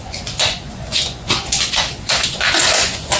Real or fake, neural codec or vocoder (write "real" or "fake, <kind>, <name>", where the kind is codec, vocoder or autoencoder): fake, vocoder, Vocos